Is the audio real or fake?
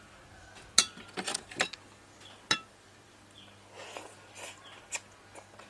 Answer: real